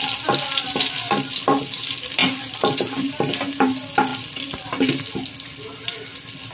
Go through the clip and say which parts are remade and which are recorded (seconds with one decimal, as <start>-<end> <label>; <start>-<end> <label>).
0.0-6.5 recorded